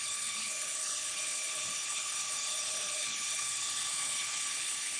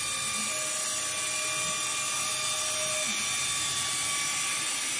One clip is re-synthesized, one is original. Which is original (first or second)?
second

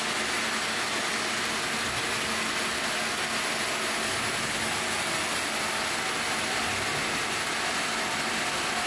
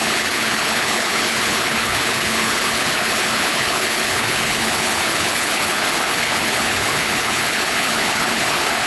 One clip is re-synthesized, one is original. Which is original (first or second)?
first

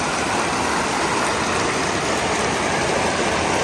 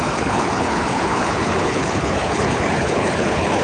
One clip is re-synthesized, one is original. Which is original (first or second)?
first